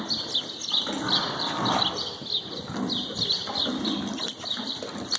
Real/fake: real